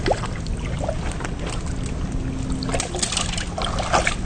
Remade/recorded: recorded